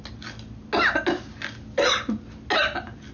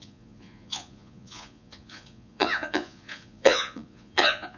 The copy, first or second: second